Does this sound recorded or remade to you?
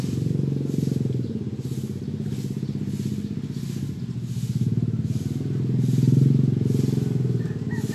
recorded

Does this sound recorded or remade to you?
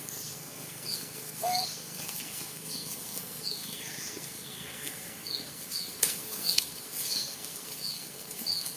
remade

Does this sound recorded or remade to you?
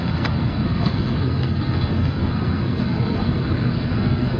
remade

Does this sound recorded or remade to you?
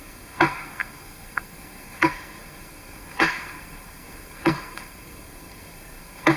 remade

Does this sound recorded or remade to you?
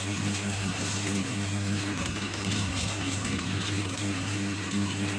remade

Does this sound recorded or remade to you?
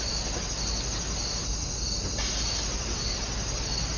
recorded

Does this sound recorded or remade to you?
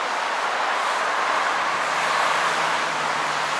recorded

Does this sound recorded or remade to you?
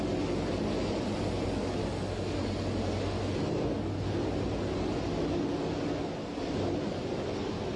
recorded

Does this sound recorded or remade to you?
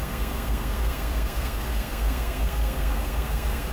remade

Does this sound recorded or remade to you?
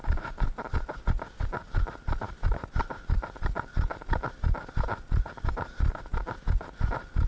recorded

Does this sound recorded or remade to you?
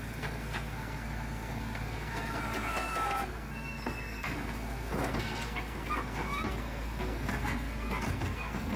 remade